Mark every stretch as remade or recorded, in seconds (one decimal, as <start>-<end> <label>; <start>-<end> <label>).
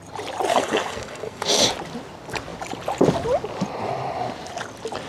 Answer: 0.0-0.5 recorded; 0.5-1.6 remade; 1.6-5.1 recorded